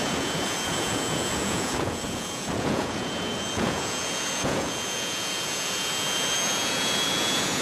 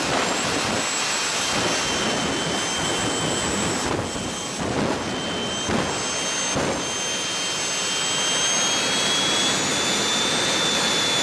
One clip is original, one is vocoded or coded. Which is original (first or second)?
second